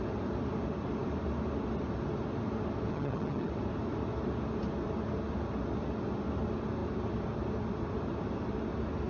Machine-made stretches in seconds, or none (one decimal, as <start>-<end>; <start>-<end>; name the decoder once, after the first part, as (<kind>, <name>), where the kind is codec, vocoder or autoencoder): 2.9-3.5 (vocoder, HiFi-GAN)